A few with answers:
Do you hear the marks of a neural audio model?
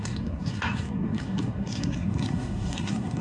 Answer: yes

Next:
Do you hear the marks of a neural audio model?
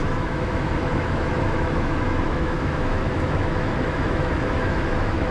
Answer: yes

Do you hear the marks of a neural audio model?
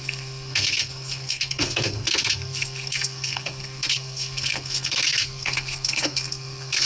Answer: yes